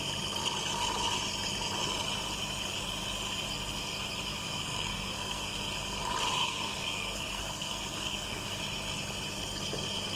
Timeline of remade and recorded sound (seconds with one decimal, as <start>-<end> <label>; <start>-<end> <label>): 0.0-4.3 recorded; 4.3-5.7 remade; 5.7-6.4 recorded; 6.4-8.6 remade; 8.6-10.2 recorded